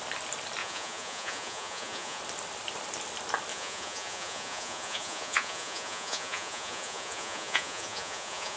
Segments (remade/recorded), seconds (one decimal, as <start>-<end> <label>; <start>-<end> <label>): 0.0-0.6 recorded; 0.6-2.2 remade; 2.2-3.5 recorded; 3.5-8.6 remade

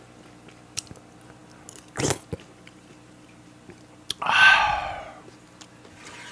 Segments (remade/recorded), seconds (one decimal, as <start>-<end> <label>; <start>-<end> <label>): 0.0-6.3 recorded

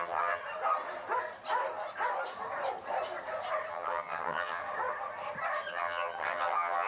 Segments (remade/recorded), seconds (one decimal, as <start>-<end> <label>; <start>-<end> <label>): 0.0-0.4 remade; 0.4-3.7 recorded; 3.7-4.6 remade; 4.6-5.7 recorded; 5.7-6.9 remade

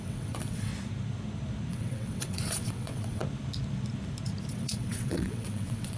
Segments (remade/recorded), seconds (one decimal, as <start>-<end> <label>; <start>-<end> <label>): 0.0-0.7 remade; 0.7-1.7 recorded; 1.7-3.2 remade; 3.2-4.5 recorded; 4.5-6.0 remade